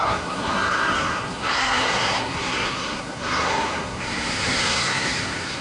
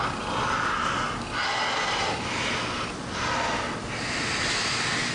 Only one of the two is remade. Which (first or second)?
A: first